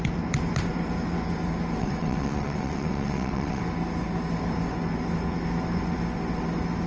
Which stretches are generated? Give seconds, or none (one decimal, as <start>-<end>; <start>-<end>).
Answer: 1.8-3.6